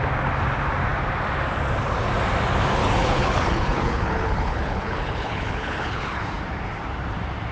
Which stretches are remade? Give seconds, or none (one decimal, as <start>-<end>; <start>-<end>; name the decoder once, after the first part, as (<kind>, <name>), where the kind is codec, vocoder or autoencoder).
2.8-6.2 (codec, HILCodec)